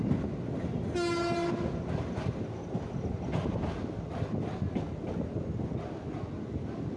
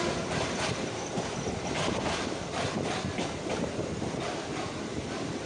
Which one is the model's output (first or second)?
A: second